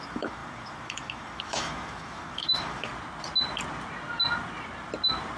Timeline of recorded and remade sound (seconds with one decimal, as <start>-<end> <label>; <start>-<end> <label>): 0.0-2.9 remade; 2.9-5.4 recorded